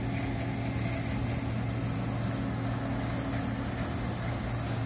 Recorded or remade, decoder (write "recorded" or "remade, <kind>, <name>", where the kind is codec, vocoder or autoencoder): recorded